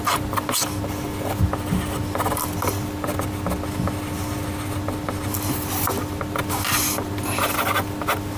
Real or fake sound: real